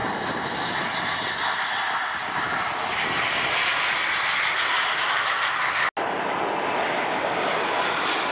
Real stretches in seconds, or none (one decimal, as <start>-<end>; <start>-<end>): 0.0-8.3